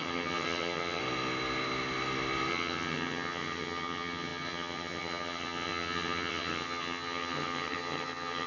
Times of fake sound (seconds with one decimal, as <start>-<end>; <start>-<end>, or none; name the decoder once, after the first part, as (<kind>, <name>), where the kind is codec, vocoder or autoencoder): 0.0-1.0 (vocoder, HiFi-GAN); 2.5-8.5